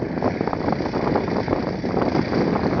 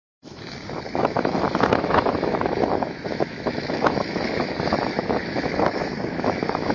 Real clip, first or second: first